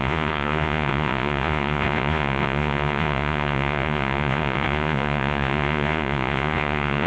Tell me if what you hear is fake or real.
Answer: fake